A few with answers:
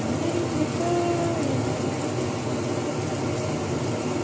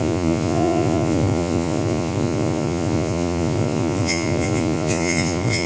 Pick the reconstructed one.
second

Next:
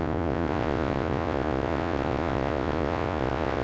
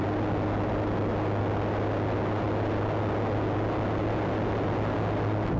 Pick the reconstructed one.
first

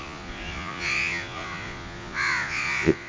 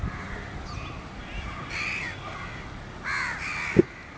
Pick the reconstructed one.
first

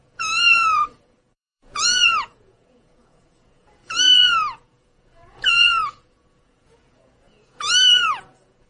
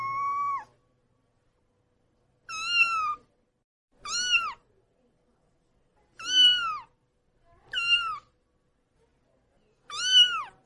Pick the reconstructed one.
first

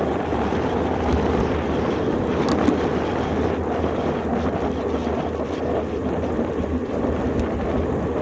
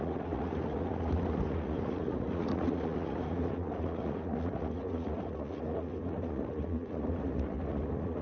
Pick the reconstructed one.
second